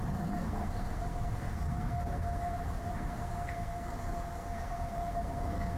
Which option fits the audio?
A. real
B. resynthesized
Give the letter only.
B